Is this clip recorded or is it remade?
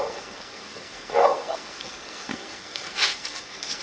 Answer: remade